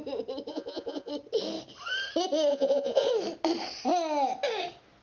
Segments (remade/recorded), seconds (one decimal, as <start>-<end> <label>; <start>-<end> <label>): 0.0-0.5 recorded; 0.5-1.1 remade; 1.1-2.5 recorded; 2.5-3.1 remade; 3.1-5.0 recorded